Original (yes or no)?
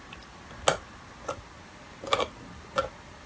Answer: yes